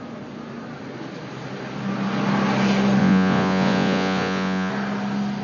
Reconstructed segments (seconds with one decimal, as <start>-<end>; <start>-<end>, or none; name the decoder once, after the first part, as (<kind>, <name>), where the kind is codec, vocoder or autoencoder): 3.0-4.7 (vocoder, Vocos)